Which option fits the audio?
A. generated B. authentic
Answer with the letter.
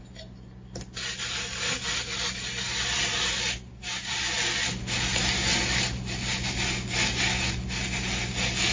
B